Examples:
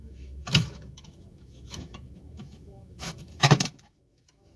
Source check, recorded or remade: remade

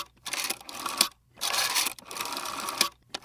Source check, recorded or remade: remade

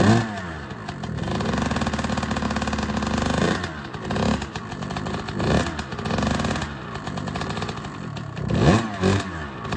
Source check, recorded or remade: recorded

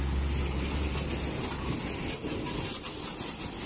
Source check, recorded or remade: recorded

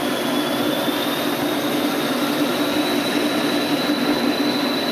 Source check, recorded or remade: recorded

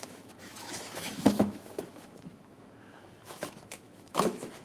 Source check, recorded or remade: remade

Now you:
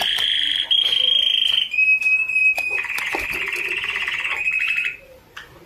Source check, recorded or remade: recorded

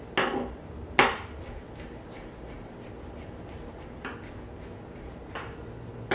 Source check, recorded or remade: recorded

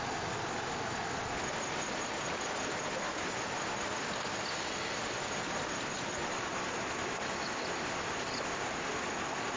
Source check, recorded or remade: recorded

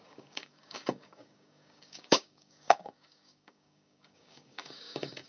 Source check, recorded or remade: remade